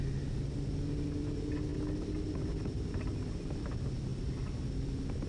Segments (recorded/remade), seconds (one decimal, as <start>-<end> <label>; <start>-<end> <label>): 0.0-5.3 recorded